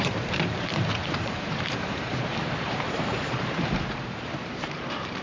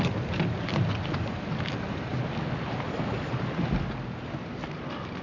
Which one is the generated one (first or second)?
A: first